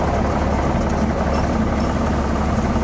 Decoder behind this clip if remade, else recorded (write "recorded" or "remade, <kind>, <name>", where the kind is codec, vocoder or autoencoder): recorded